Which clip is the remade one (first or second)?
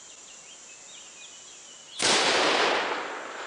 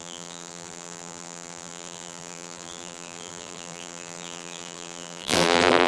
second